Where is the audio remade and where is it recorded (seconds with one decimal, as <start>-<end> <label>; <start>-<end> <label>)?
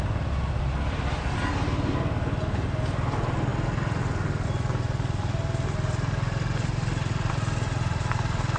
0.0-8.6 recorded